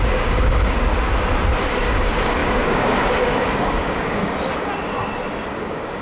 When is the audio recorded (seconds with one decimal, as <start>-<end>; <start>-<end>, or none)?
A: 0.9-1.8; 4.2-5.6